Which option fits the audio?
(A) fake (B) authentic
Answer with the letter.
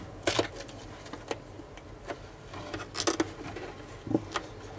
B